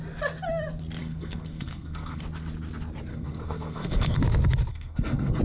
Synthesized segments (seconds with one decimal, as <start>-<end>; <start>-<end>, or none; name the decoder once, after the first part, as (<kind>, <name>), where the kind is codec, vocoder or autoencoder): 1.0-2.2 (codec, SNAC); 3.1-4.2; 4.7-5.4